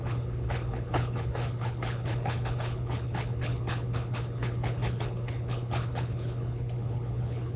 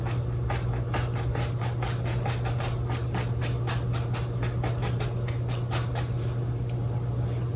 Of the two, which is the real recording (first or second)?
second